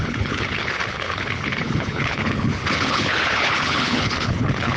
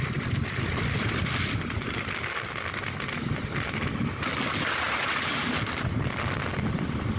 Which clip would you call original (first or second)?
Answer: second